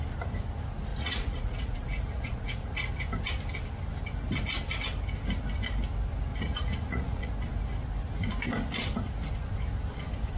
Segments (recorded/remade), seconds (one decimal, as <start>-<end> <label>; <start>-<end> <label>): 0.0-0.9 recorded; 0.9-2.9 remade; 2.9-6.3 recorded; 6.3-7.3 remade; 7.3-10.4 recorded